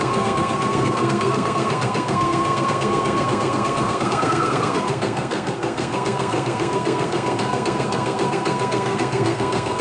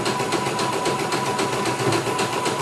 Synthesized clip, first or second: first